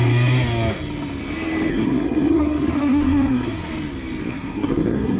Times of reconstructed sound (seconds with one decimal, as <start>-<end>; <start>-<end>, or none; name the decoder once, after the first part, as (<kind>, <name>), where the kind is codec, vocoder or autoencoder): 1.7-3.7 (codec, SNAC); 4.3-5.2